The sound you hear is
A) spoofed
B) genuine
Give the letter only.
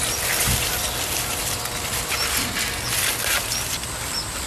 B